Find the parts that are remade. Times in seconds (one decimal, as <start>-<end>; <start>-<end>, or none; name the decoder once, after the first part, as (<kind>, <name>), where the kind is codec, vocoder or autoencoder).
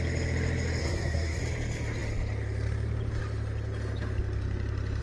0.8-1.4 (codec, SNAC)